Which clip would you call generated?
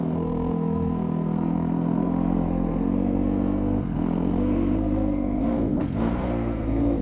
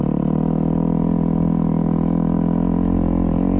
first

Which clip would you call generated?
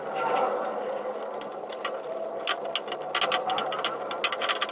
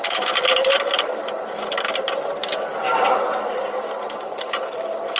second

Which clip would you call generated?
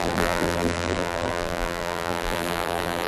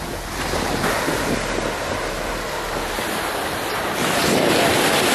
first